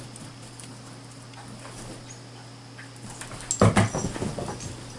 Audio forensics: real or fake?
real